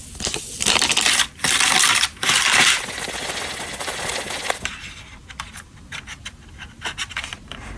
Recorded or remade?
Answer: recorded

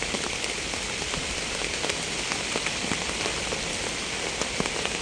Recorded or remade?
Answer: recorded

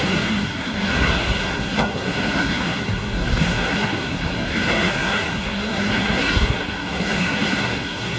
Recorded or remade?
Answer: remade